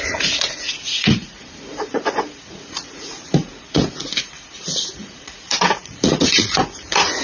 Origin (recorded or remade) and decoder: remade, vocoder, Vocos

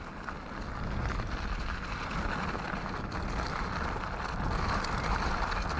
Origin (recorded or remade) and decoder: recorded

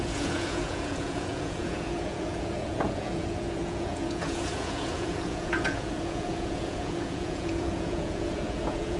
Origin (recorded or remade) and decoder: remade, vocoder, Vocos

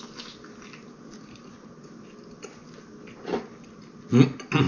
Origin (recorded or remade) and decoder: recorded